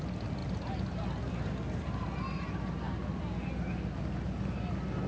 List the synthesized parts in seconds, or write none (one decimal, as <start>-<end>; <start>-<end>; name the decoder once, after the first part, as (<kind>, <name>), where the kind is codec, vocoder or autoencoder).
none